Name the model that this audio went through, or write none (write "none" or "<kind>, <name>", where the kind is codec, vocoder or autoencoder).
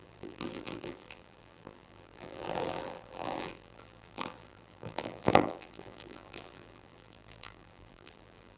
vocoder, BigVGAN v2